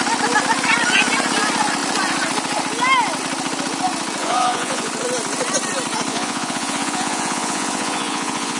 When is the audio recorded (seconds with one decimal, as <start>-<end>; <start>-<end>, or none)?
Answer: 0.0-4.2; 4.9-6.1